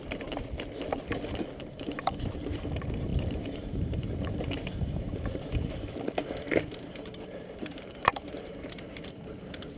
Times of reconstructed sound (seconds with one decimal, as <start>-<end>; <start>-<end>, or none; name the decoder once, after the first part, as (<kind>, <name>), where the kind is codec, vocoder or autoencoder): 0.0-9.8 (vocoder, BigVGAN v2)